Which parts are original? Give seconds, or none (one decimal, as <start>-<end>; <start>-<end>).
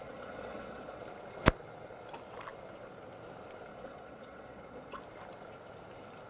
1.0-3.7; 5.0-6.3